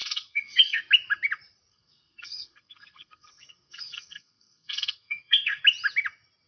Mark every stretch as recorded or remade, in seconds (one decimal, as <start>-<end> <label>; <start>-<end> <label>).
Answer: 0.0-0.8 remade; 0.8-1.7 recorded; 1.7-5.6 remade; 5.6-6.5 recorded